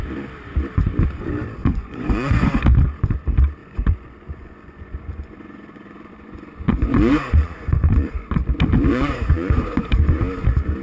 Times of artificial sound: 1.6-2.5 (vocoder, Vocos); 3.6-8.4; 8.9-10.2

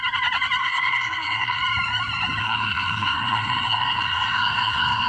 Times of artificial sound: 0.6-1.6 (codec, SNAC); 2.4-5.1

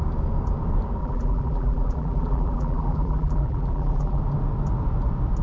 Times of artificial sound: 1.0-4.2 (vocoder, BigVGAN v2)